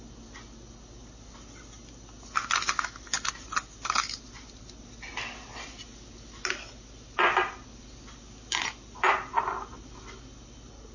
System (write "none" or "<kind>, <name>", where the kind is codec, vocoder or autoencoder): none